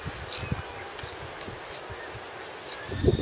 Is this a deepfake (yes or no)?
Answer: no